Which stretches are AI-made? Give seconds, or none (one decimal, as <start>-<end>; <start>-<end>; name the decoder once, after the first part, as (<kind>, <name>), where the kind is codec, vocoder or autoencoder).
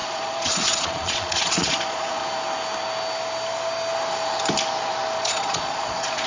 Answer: 0.0-2.2 (vocoder, Vocos); 5.2-6.3